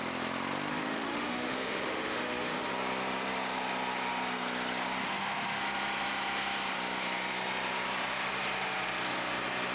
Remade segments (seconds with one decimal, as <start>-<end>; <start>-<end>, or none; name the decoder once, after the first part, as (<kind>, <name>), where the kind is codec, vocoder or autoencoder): 0.7-2.7 (autoencoder, DAC-VAE); 5.0-5.6